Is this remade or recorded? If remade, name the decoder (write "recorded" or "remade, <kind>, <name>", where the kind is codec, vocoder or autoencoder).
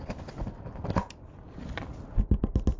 recorded